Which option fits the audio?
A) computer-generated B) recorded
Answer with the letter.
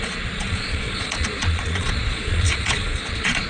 A